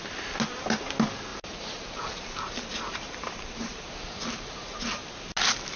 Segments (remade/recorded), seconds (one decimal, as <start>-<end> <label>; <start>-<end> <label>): 0.0-1.3 recorded; 1.3-4.8 remade; 4.8-5.8 recorded